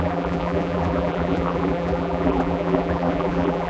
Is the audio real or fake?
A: fake